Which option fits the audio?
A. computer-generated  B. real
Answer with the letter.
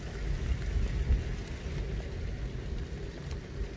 B